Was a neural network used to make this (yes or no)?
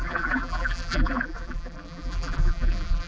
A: yes